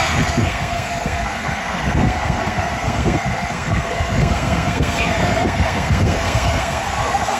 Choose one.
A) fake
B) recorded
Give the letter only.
A